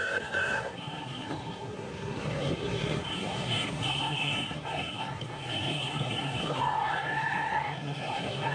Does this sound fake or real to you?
fake